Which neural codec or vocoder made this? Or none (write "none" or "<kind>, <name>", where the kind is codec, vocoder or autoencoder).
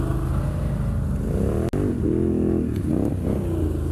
none